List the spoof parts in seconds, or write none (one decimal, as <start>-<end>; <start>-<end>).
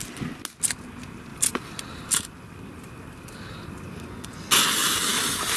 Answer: 1.3-4.0